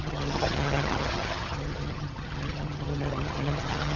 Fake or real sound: fake